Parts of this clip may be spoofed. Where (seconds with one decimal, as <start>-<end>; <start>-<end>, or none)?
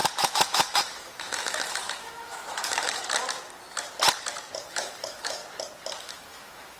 0.0-3.0; 4.6-5.4; 6.0-6.8